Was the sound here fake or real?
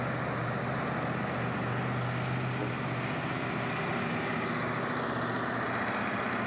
real